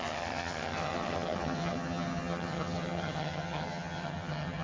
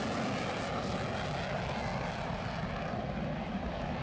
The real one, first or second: second